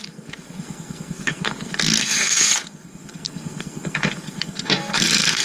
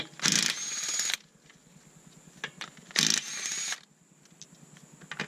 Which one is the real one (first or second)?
second